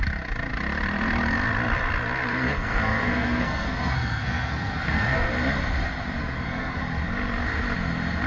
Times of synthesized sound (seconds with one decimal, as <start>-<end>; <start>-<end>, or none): 2.3-5.3; 6.2-6.8